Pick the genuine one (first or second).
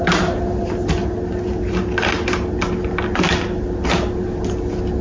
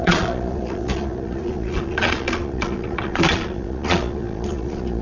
first